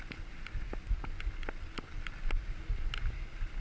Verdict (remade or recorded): recorded